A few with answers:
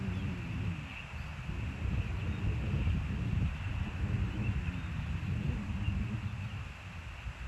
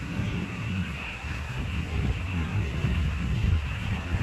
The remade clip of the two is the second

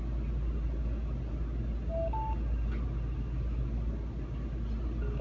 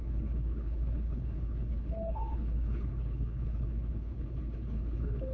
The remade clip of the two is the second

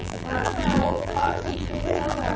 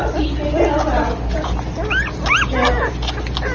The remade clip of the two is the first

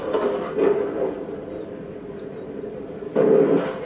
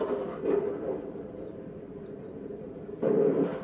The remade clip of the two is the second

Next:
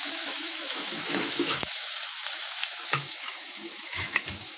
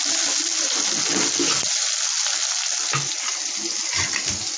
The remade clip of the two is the first